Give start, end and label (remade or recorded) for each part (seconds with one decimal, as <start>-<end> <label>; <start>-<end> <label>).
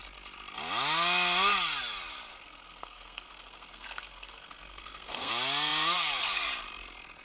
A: 0.0-2.3 recorded; 2.3-5.3 remade; 5.3-7.2 recorded